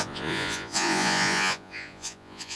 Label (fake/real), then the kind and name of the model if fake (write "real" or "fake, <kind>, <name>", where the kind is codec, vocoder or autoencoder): fake, vocoder, Vocos